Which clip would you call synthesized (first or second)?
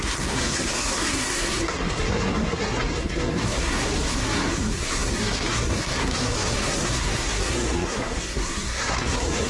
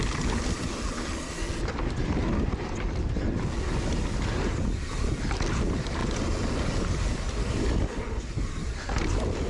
first